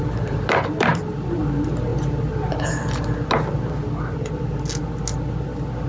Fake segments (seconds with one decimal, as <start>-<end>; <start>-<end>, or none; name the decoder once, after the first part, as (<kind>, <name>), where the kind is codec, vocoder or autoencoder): none